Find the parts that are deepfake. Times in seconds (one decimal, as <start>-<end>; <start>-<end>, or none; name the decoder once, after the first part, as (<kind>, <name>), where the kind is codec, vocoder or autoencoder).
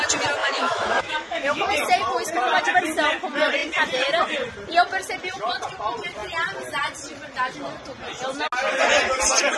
0.4-1.7 (autoencoder, DAC-VAE)